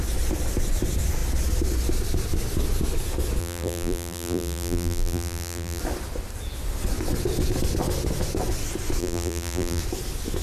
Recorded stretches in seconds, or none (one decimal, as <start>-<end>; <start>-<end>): 0.0-3.4; 5.8-9.0; 9.8-10.4